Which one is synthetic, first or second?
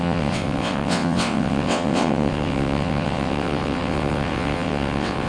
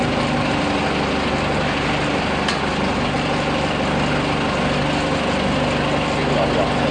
first